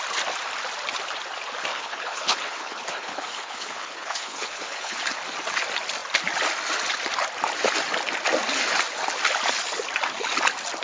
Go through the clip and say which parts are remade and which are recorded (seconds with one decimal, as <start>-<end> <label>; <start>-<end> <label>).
0.0-1.7 recorded; 1.7-5.0 remade; 5.0-10.8 recorded